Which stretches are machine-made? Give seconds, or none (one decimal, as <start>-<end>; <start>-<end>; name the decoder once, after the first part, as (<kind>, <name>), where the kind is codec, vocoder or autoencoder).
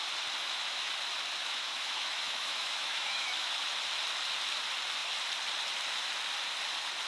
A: 0.4-0.9 (autoencoder, DAC-VAE); 1.4-3.5